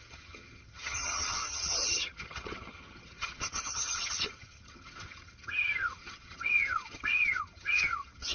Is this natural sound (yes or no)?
no